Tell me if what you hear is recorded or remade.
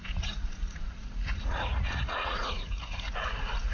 remade